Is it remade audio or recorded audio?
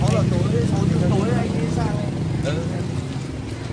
recorded